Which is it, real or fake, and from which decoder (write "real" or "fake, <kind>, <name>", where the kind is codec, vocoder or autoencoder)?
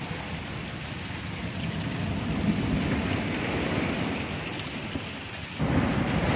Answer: real